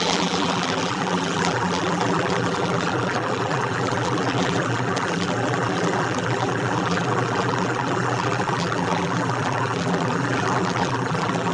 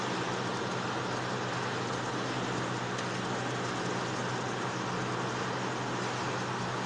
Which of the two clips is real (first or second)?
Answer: second